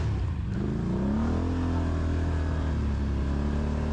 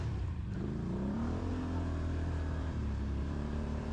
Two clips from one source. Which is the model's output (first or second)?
second